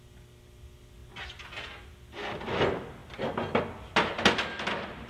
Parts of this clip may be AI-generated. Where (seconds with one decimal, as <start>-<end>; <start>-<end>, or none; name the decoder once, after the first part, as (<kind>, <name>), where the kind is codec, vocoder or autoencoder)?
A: none